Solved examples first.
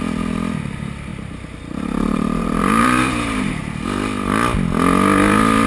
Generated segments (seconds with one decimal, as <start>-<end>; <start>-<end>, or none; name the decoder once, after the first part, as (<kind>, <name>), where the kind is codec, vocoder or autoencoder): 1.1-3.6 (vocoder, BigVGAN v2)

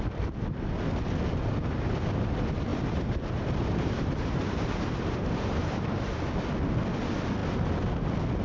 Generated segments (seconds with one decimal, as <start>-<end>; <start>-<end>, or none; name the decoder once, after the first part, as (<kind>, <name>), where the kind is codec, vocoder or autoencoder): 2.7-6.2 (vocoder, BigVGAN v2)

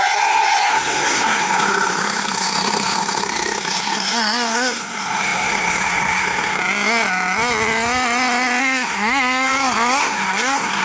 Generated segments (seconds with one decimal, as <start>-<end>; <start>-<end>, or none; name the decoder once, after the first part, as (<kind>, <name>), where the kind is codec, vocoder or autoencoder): 0.0-6.6 (codec, SNAC); 8.6-9.5; 10.0-10.8

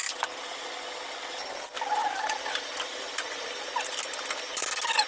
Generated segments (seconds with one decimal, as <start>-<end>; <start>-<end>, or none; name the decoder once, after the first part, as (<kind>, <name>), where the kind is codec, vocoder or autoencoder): none

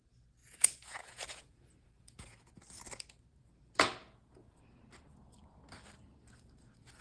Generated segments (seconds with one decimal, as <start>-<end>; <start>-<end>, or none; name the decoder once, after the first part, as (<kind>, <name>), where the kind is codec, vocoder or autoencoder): 0.4-2.6 (vocoder, Vocos); 4.0-4.6